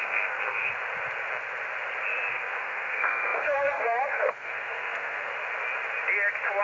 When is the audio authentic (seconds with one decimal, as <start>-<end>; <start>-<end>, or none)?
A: 0.7-2.3; 5.3-6.6